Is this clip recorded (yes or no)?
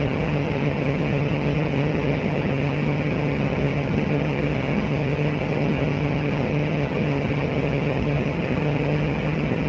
no